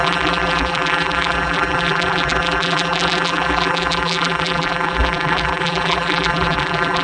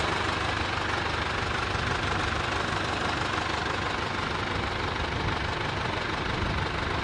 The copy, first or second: first